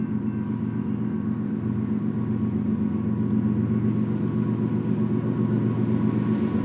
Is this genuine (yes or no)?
yes